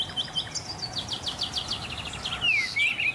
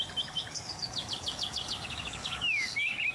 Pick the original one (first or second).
first